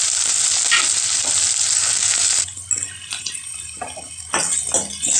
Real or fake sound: real